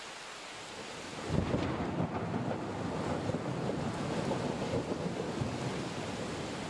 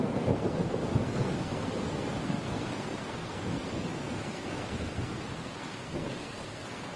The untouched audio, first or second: first